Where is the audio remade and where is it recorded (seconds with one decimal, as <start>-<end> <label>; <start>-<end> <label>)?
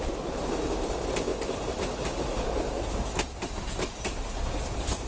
0.0-5.1 recorded